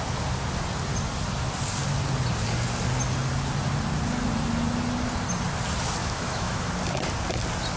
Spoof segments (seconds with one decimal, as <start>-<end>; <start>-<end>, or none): 6.0-6.7